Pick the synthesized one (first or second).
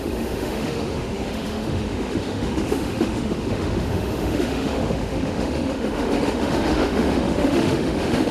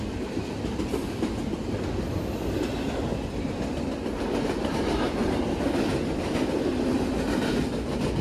first